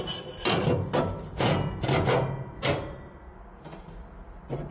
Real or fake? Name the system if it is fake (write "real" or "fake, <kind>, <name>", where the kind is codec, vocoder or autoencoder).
real